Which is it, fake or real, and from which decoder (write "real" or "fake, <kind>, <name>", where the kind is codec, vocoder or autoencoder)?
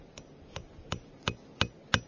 real